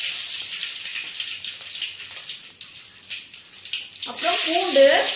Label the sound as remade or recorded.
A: recorded